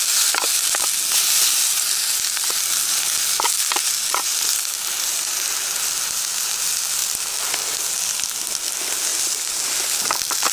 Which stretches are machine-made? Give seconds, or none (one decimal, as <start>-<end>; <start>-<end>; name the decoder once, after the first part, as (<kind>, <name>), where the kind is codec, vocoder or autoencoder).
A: none